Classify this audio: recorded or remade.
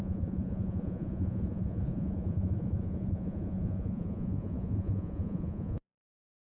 remade